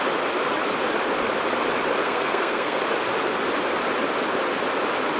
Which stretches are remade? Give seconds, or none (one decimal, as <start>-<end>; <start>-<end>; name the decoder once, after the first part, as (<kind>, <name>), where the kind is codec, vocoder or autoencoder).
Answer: 2.0-2.8 (codec, SNAC)